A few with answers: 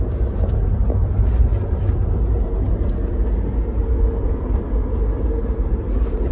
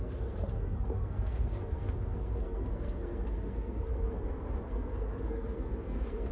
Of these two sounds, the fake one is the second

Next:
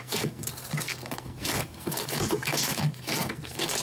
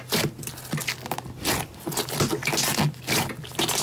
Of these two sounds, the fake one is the first